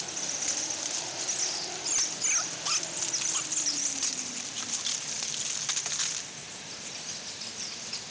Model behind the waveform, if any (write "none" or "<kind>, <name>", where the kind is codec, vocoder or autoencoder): none